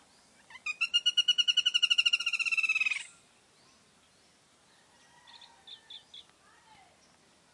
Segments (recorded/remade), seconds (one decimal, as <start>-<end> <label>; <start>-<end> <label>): 0.0-7.5 recorded